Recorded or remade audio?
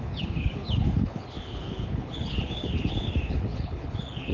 remade